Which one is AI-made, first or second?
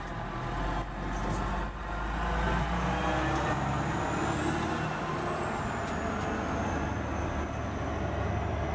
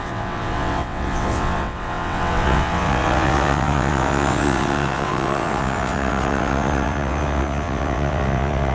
second